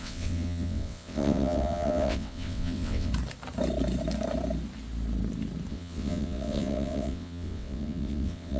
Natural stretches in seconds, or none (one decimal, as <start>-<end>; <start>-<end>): 3.1-5.7